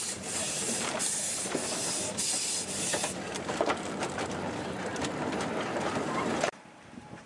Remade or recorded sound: remade